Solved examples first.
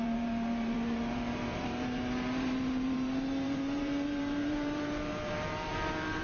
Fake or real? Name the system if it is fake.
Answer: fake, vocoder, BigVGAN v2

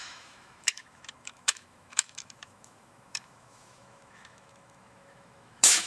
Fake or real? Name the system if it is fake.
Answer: fake, autoencoder, DAC-VAE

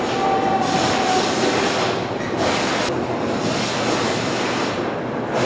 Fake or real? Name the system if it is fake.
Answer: real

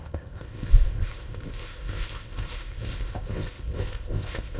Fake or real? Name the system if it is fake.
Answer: fake, codec, ZipCodec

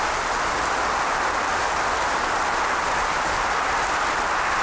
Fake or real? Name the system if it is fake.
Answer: real